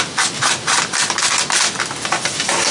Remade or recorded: recorded